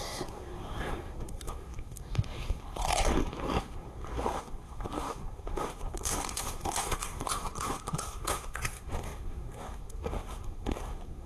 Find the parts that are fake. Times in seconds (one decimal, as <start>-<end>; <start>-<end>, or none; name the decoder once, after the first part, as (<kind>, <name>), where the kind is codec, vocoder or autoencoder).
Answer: 0.0-11.3 (codec, SNAC)